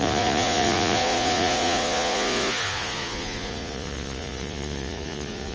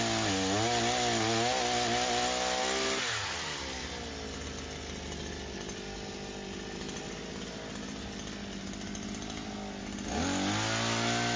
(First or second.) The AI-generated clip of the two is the first